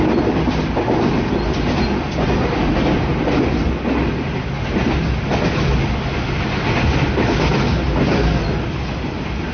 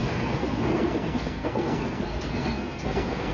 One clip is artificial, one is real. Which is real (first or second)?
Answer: first